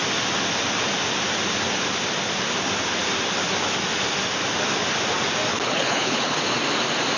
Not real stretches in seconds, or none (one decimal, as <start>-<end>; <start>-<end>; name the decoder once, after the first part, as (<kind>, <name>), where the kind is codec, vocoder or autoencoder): 5.5-6.4 (codec, HILCodec)